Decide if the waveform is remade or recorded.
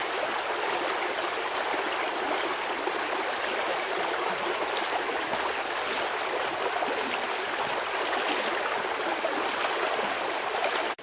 recorded